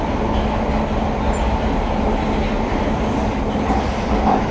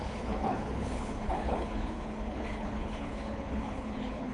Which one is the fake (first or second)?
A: second